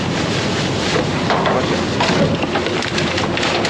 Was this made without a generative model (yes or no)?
yes